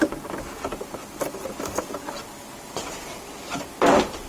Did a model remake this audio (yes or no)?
no